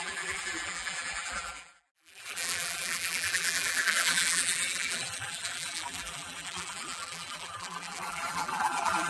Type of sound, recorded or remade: remade